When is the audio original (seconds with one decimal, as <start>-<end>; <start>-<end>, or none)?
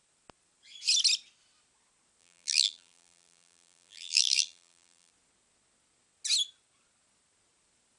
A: 0.0-2.2; 5.1-8.0